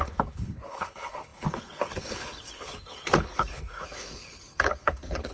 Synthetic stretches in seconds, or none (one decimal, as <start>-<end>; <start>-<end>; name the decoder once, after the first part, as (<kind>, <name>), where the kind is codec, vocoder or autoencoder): 0.0-5.3 (codec, HILCodec)